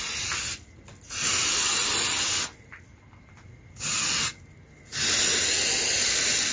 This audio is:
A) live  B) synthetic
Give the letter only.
A